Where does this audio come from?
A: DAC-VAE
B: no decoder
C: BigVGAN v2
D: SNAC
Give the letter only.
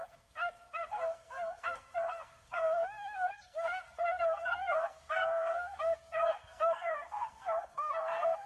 D